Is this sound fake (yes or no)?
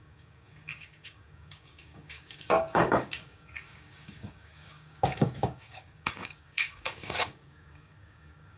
yes